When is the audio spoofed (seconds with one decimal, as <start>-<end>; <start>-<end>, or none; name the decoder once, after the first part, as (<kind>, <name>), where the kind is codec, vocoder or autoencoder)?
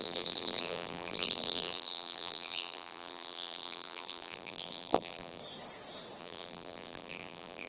0.0-5.4 (vocoder, BigVGAN v2); 6.2-7.7